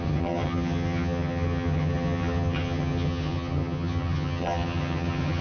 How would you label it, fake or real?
fake